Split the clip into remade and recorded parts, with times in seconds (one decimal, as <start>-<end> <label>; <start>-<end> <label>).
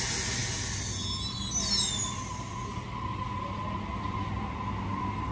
0.0-5.3 recorded